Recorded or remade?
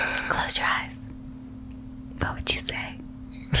recorded